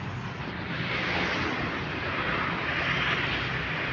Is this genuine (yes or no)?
yes